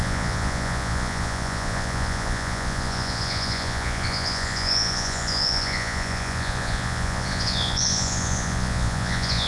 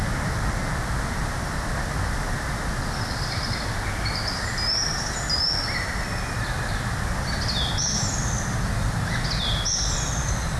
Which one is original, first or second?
second